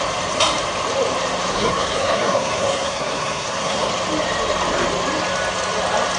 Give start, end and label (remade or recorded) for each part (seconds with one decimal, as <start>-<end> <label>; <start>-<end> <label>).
0.0-1.5 recorded; 1.5-3.9 remade; 3.9-6.2 recorded